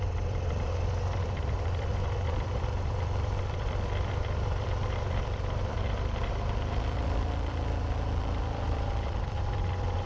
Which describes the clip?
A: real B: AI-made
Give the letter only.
B